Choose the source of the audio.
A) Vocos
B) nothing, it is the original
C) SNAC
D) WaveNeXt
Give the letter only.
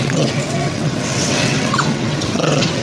D